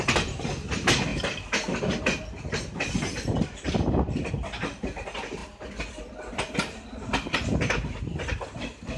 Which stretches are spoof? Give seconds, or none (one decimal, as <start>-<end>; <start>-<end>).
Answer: none